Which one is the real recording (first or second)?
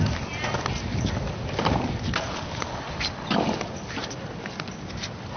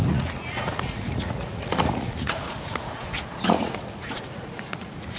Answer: first